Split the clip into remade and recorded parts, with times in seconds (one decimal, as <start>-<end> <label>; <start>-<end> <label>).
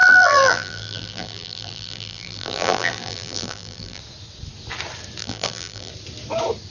0.0-4.0 remade; 4.0-5.2 recorded; 5.2-5.9 remade; 5.9-6.7 recorded